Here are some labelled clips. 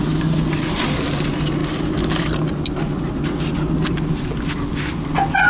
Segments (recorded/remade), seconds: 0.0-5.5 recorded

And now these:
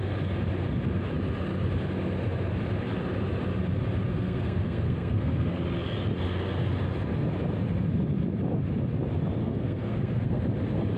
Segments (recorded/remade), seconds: 0.0-4.1 recorded; 4.1-5.5 remade; 5.5-9.4 recorded; 9.4-10.4 remade; 10.4-11.0 recorded

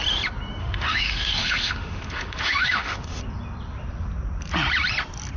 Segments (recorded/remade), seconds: 0.0-0.6 recorded; 0.6-3.2 remade; 3.2-5.4 recorded

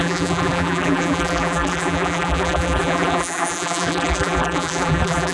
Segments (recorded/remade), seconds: 0.0-5.3 remade

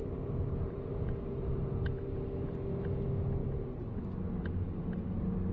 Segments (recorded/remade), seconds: 0.0-1.8 remade; 1.8-3.4 recorded; 3.4-4.0 remade; 4.0-5.5 recorded